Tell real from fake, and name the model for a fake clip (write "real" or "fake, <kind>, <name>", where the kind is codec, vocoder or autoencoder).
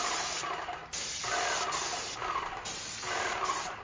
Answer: real